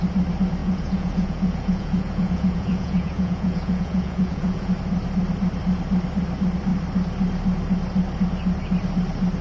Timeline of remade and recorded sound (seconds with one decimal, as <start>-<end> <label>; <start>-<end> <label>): 0.0-0.6 recorded; 0.6-4.7 remade; 4.7-9.4 recorded